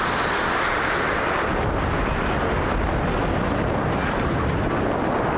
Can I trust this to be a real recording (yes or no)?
yes